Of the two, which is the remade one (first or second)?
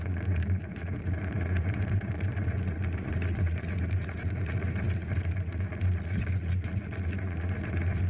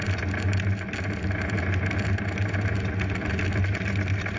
first